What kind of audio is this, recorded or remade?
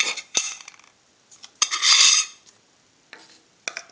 recorded